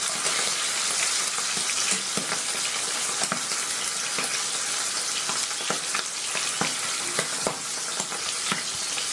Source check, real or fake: real